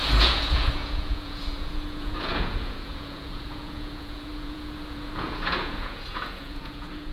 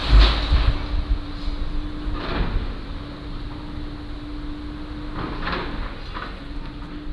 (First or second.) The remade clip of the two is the first